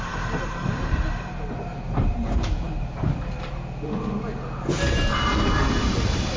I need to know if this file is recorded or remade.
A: recorded